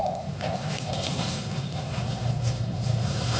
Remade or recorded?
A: remade